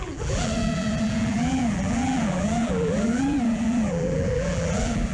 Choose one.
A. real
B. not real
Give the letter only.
B